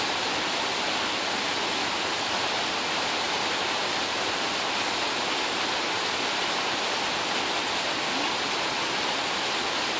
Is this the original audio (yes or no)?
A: yes